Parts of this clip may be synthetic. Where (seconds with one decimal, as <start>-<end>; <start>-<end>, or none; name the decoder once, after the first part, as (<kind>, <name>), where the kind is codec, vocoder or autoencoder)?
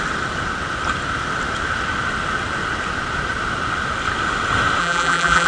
4.8-5.5 (vocoder, BigVGAN v2)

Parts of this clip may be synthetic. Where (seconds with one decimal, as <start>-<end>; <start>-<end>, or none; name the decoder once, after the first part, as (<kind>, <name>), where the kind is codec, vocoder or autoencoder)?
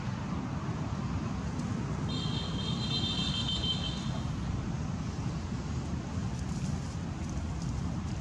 none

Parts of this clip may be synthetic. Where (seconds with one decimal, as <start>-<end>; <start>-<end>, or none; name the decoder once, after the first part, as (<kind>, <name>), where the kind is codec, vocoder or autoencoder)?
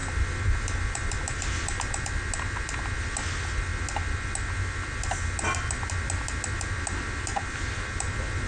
0.0-2.1 (vocoder, BigVGAN v2); 7.3-8.5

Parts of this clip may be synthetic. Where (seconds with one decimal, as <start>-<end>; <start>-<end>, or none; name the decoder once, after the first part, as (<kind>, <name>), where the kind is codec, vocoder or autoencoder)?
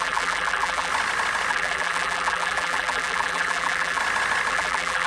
0.0-0.9 (vocoder, BigVGAN v2); 1.5-4.0; 4.5-5.1